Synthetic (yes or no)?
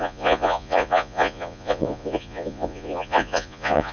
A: yes